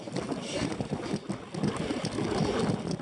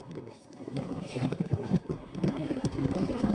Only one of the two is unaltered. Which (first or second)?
first